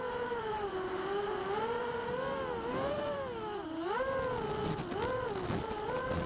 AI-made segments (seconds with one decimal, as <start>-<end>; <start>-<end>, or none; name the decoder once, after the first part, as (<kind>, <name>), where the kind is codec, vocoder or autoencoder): none